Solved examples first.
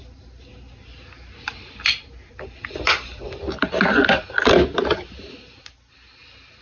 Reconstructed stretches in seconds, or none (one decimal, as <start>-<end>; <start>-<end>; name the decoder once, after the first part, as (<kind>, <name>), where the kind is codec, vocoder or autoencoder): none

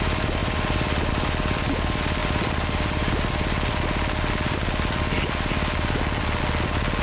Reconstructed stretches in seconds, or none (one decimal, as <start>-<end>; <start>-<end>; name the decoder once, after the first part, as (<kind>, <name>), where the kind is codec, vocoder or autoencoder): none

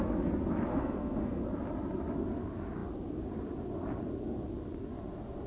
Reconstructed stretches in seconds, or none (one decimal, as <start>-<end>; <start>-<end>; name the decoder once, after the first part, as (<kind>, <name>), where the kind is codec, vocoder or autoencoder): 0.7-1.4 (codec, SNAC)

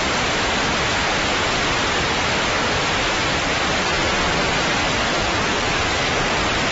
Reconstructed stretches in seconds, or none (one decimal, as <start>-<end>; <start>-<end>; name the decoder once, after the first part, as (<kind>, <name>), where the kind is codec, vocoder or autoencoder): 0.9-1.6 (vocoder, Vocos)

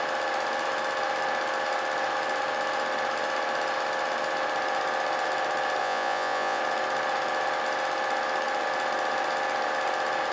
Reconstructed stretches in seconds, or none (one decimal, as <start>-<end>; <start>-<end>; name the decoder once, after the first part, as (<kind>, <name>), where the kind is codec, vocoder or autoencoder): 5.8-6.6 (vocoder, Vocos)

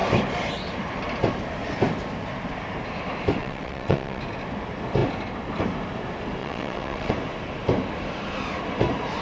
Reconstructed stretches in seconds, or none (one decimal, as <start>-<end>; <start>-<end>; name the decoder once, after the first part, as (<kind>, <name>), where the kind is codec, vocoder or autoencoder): 3.4-4.2 (vocoder, WaveNeXt); 6.4-7.1

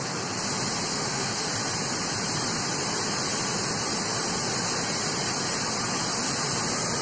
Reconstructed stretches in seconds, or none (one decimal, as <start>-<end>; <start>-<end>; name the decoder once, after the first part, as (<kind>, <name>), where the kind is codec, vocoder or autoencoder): 0.9-1.5 (autoencoder, DAC-VAE)

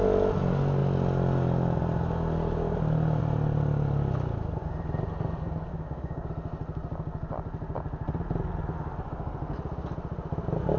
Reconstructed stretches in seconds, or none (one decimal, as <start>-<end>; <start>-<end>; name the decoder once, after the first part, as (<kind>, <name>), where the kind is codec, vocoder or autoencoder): 5.7-6.3 (codec, DAC)